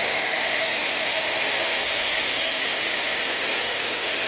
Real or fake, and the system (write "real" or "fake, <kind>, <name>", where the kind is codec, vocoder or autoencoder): fake, autoencoder, DAC-VAE